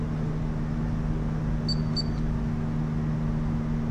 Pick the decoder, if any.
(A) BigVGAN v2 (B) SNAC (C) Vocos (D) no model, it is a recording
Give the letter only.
D